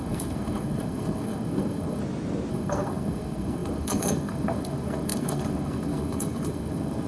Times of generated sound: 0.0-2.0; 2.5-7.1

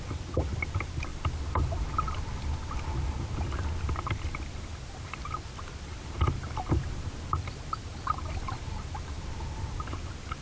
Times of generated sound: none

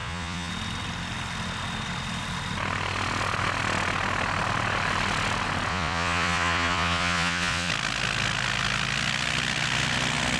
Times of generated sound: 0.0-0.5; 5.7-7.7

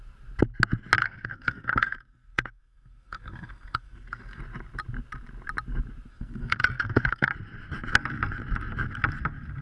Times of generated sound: 1.0-4.4; 6.1-7.3

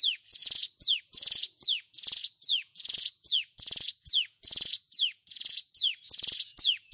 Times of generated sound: 0.0-6.9

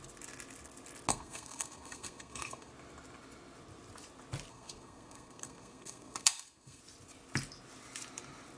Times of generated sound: 1.1-2.7; 4.5-6.8